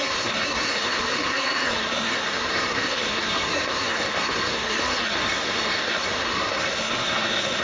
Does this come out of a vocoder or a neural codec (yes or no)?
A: yes